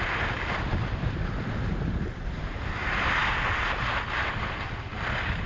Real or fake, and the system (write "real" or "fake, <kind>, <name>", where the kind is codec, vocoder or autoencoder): real